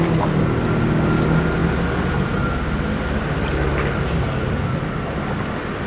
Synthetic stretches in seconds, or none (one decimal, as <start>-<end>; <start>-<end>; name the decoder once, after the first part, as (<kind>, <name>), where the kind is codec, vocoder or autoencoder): none